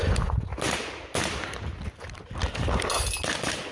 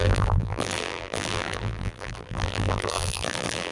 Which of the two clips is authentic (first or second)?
first